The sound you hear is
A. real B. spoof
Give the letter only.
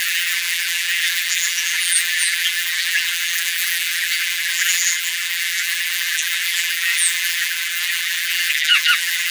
B